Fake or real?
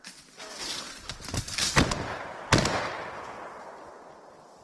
real